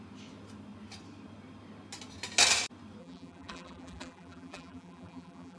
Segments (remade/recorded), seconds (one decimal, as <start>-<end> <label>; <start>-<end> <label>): 0.0-3.0 recorded; 3.0-5.6 remade